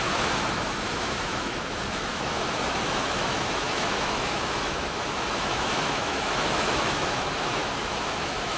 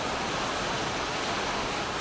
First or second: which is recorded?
second